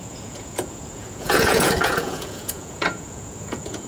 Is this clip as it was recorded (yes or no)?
no